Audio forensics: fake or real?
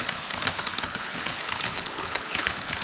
fake